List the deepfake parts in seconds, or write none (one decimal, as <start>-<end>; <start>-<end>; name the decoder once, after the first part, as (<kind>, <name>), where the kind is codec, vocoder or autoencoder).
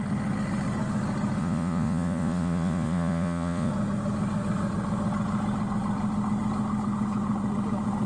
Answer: 1.4-3.7 (vocoder, Vocos)